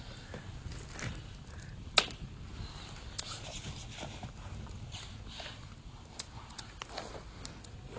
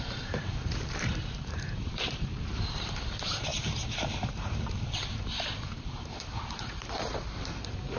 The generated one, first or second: second